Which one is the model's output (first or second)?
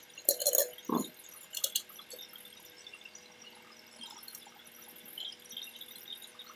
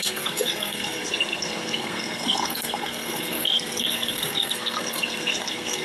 second